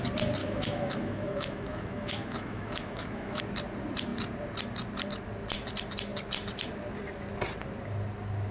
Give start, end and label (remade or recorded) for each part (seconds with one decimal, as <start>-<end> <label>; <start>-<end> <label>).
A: 0.0-0.4 recorded; 0.4-3.4 remade; 3.4-8.5 recorded